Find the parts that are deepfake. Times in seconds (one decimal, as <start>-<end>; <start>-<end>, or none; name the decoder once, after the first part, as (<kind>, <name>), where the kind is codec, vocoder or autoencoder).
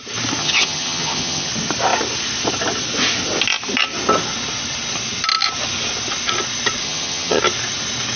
0.4-1.5 (vocoder, HiFi-GAN); 6.8-7.4